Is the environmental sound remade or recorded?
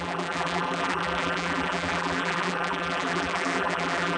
remade